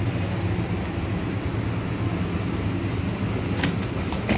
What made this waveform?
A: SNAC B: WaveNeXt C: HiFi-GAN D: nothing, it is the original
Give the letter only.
D